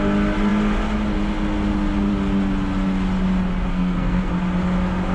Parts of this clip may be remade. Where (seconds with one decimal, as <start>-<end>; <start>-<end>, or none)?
3.7-4.3